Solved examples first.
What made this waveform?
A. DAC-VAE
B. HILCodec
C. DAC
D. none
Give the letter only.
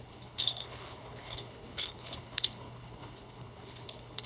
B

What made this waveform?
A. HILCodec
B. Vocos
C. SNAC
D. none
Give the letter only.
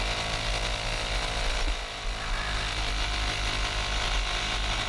D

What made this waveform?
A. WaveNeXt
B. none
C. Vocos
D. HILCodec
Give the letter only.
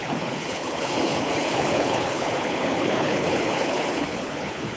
D